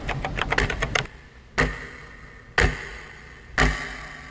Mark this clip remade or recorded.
recorded